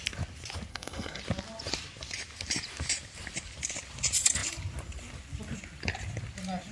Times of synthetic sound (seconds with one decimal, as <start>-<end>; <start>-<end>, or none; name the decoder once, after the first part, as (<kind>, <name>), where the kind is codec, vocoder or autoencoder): 0.7-1.2 (codec, SNAC)

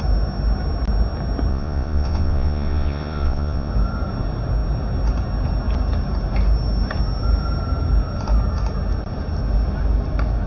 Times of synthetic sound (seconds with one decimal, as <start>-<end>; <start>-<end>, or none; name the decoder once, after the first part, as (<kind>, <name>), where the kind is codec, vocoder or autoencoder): 1.5-3.7 (vocoder, Vocos)

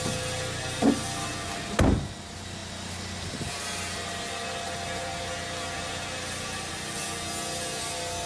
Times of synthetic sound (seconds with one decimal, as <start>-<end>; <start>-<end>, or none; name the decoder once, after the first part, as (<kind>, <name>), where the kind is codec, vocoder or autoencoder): none